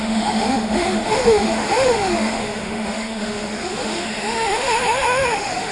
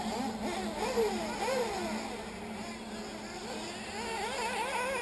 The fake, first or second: first